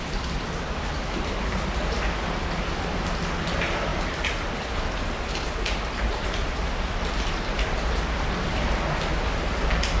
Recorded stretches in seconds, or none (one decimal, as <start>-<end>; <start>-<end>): 0.0-10.0